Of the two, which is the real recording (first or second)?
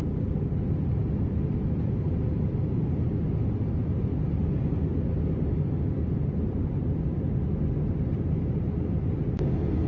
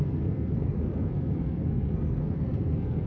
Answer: first